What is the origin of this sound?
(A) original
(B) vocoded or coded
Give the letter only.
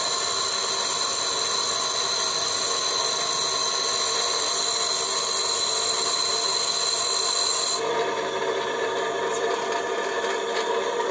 A